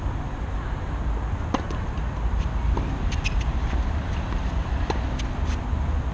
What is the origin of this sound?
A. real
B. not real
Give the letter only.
A